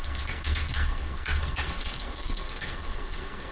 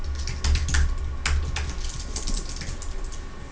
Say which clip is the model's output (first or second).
first